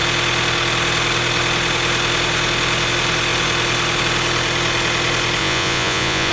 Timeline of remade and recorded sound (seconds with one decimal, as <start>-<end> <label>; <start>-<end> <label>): 0.0-5.4 recorded; 5.4-6.3 remade